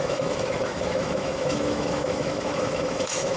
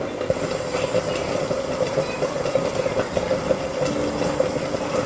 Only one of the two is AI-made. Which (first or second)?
first